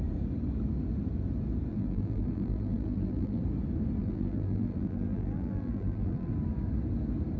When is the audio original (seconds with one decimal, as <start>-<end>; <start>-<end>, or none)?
0.0-1.7; 3.4-4.0; 6.3-7.4